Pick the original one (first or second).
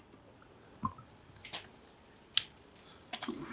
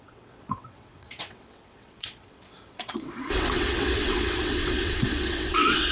first